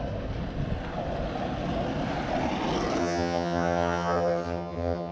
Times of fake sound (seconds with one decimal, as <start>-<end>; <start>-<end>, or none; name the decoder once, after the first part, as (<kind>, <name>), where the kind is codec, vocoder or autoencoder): 3.0-5.1 (vocoder, HiFi-GAN)